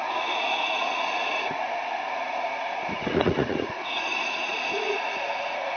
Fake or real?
fake